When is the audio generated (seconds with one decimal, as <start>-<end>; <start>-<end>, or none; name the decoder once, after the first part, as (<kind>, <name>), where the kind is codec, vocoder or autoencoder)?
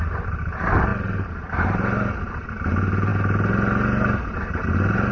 none